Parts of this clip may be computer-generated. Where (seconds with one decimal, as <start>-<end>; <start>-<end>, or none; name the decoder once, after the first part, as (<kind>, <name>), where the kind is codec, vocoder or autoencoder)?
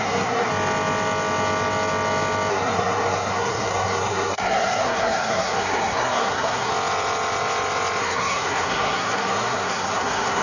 0.0-0.5 (codec, SNAC); 2.5-6.7; 8.0-10.4